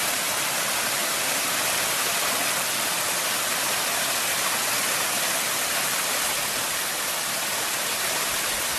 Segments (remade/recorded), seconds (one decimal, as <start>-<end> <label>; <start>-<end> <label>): 0.0-8.8 recorded